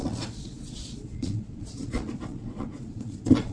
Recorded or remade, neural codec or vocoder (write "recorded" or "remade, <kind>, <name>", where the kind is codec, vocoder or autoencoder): remade, vocoder, Vocos